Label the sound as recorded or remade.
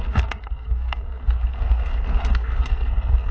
remade